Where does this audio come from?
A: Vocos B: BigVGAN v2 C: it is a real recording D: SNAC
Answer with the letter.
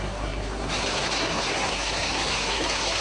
D